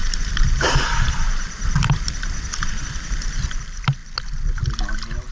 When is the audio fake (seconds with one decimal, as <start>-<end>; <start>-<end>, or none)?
0.0-3.2